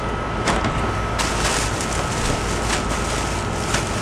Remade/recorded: recorded